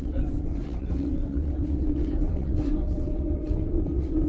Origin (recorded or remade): remade